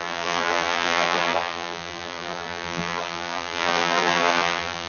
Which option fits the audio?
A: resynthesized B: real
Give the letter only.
A